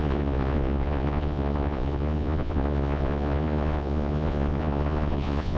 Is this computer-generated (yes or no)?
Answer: yes